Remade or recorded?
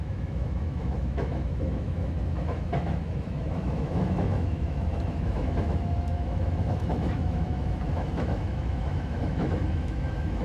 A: remade